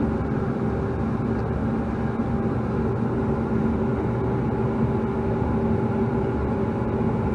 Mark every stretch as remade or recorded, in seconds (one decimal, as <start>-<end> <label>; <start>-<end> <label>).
0.0-7.3 recorded